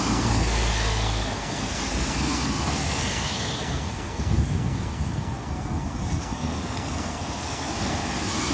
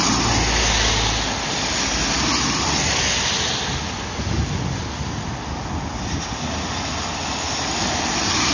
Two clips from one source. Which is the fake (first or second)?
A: first